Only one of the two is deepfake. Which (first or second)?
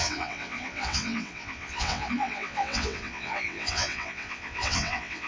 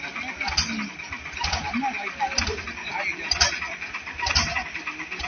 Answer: first